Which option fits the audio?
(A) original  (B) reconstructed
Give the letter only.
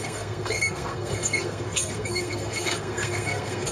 B